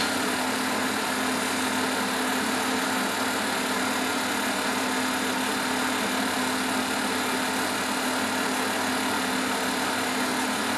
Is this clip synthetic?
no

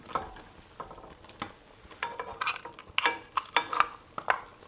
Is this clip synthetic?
no